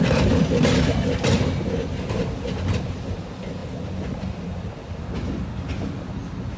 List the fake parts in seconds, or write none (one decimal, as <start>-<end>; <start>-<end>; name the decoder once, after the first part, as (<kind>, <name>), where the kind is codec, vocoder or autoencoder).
none